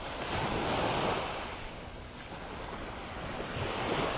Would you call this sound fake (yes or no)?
no